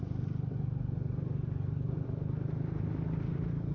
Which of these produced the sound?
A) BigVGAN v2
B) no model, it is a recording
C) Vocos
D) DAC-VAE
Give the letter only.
B